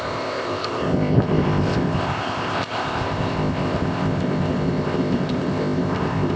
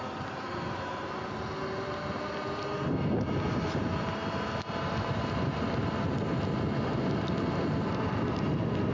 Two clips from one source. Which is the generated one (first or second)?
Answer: first